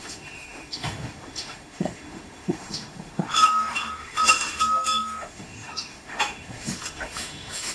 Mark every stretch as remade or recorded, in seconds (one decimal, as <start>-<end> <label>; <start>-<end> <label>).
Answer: 0.0-7.7 remade